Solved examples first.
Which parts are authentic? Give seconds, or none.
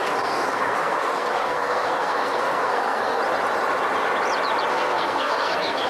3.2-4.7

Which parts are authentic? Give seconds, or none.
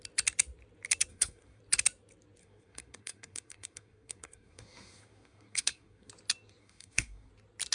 0.0-1.1; 1.6-2.4; 6.1-6.6; 7.3-7.7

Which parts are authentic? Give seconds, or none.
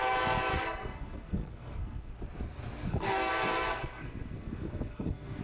0.0-0.5; 2.1-2.8; 3.3-3.7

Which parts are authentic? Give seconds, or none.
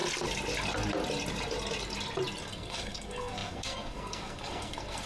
0.0-2.5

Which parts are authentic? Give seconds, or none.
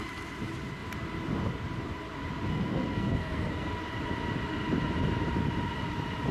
0.0-2.5; 3.7-6.3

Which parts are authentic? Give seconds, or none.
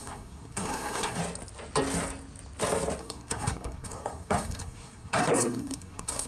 1.2-3.0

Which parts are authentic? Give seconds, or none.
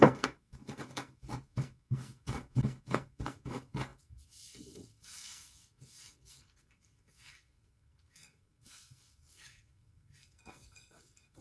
none